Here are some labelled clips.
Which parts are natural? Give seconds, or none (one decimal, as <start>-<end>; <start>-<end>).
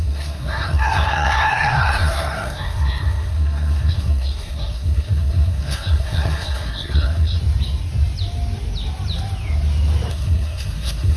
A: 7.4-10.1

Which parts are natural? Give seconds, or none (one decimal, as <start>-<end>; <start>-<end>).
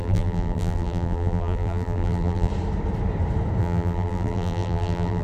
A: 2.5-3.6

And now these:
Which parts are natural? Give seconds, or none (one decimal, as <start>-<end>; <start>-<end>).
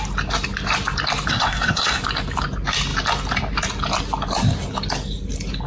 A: 0.0-1.3; 2.0-5.7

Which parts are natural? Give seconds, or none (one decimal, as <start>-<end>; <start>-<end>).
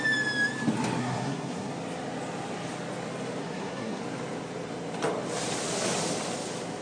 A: 0.0-1.0; 1.7-3.4; 4.0-6.8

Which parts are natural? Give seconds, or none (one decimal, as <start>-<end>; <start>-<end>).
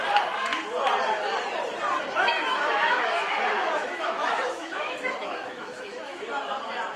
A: 0.0-2.3; 6.5-7.0